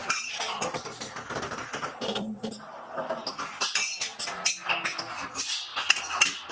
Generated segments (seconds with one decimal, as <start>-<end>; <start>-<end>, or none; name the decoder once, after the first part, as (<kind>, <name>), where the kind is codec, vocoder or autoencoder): 0.0-3.3 (vocoder, BigVGAN v2)